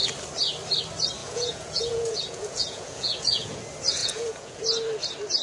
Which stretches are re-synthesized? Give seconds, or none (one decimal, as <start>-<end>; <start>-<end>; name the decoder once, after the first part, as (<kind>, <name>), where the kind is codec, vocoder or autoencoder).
1.2-3.6 (vocoder, Vocos); 4.0-4.6